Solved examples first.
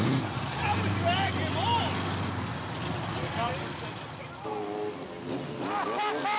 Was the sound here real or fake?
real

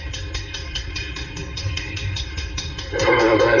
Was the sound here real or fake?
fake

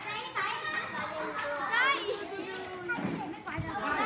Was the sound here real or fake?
real